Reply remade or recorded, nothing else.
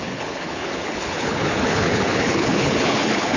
remade